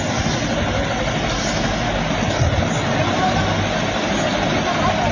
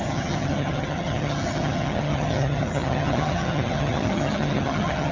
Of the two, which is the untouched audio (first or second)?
first